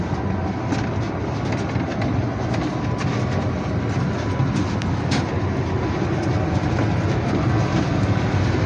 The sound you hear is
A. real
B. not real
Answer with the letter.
A